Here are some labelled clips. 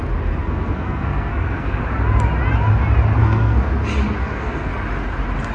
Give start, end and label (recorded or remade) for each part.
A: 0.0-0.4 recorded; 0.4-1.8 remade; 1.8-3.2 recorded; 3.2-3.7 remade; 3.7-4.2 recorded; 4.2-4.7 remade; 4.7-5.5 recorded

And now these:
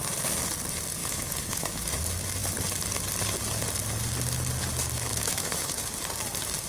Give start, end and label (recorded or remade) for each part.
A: 0.0-1.0 recorded; 1.0-1.9 remade; 1.9-5.1 recorded; 5.1-5.8 remade; 5.8-6.7 recorded

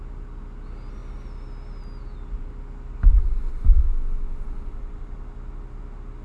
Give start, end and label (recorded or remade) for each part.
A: 0.0-6.2 recorded

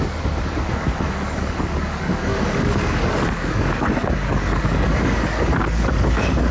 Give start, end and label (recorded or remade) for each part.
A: 0.0-6.5 remade

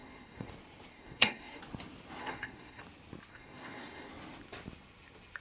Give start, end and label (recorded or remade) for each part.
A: 0.0-0.5 remade; 0.5-0.9 recorded; 0.9-1.6 remade; 1.6-2.2 recorded; 2.2-2.8 remade; 2.8-3.3 recorded; 3.3-4.1 remade; 4.1-5.4 recorded

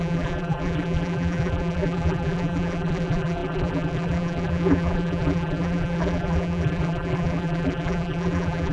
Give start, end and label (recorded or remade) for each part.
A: 0.0-8.7 remade